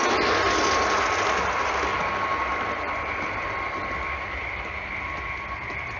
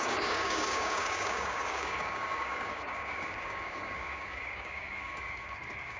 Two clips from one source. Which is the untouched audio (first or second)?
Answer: first